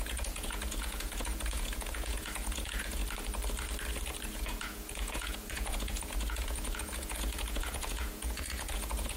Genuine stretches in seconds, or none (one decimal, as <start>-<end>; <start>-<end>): 3.0-4.3